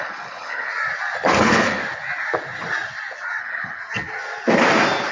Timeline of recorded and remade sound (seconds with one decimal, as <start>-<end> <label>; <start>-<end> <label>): 0.0-0.7 remade; 0.7-1.4 recorded; 1.4-1.8 remade; 1.8-3.4 recorded; 3.4-3.8 remade; 3.8-5.1 recorded